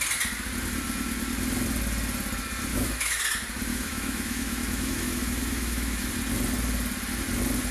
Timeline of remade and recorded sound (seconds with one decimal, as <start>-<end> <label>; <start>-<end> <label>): 0.0-2.7 recorded; 2.7-3.2 remade; 3.2-3.7 recorded; 3.7-6.1 remade; 6.1-7.7 recorded

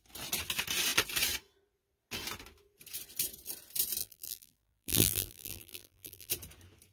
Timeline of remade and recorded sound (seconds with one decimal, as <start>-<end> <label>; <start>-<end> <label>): 0.0-4.0 recorded; 4.0-6.3 remade; 6.3-6.9 recorded

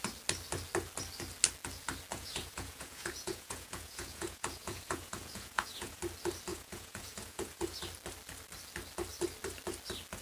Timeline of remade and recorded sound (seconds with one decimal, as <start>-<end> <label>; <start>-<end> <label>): 0.0-2.1 recorded; 2.1-6.0 remade; 6.0-6.5 recorded; 6.5-7.8 remade; 7.8-10.2 recorded

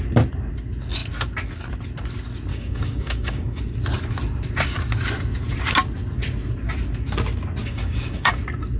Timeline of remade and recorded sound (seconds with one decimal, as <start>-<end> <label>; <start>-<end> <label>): 0.0-2.5 recorded; 2.5-3.6 remade; 3.6-7.6 recorded; 7.6-8.4 remade; 8.4-8.8 recorded